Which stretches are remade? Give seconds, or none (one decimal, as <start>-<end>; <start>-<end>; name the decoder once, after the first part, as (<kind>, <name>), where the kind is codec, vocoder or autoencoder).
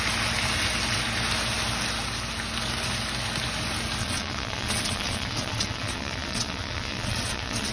4.0-7.7 (vocoder, WaveNeXt)